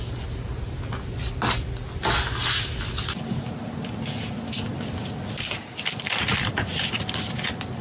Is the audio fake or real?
real